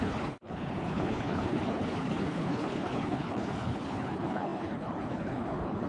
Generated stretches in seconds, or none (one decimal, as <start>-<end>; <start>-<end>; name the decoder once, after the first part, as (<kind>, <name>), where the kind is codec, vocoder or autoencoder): 0.0-5.9 (codec, HILCodec)